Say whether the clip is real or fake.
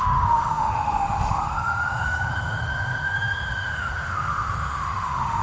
fake